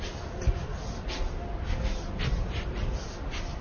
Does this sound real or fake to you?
real